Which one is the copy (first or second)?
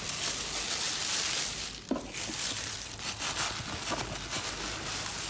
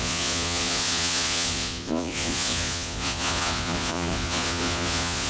second